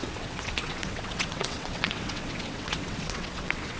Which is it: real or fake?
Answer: fake